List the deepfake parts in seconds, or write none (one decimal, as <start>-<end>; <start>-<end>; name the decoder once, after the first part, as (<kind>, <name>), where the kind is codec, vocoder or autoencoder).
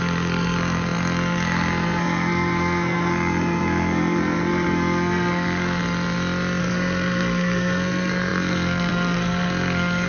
0.0-5.8 (codec, SNAC); 6.6-10.1